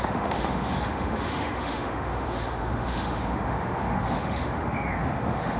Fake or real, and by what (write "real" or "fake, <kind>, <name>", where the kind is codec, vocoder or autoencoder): fake, autoencoder, DAC-VAE